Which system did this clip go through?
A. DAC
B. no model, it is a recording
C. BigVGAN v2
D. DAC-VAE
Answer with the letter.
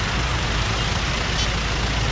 B